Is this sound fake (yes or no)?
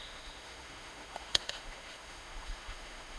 yes